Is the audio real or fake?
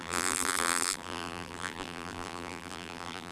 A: fake